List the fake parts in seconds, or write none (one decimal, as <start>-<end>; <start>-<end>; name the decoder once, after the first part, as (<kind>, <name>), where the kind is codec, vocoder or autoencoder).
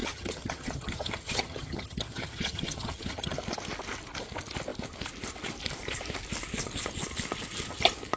0.0-3.4 (vocoder, HiFi-GAN)